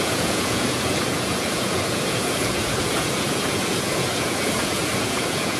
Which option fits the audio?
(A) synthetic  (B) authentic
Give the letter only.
A